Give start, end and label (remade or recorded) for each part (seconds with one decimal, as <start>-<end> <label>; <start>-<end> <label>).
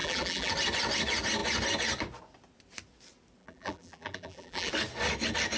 0.0-0.5 remade; 0.5-3.4 recorded; 3.4-4.7 remade; 4.7-5.6 recorded